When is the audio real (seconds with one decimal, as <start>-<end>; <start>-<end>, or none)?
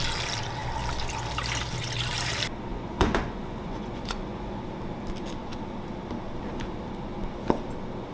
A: 0.0-2.7; 4.6-8.1